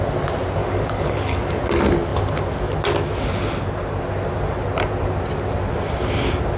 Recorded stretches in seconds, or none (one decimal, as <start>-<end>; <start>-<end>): 0.0-0.6; 1.6-6.6